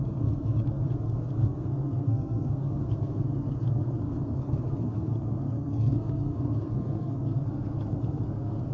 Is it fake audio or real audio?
fake